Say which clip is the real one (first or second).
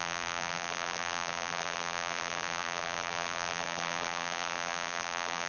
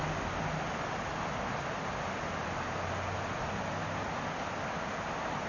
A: second